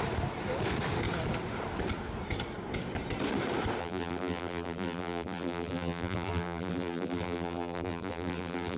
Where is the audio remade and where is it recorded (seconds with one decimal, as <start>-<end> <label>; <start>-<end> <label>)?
0.0-3.8 recorded; 3.8-8.8 remade